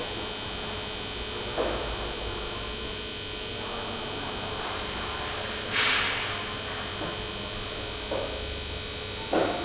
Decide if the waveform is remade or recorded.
recorded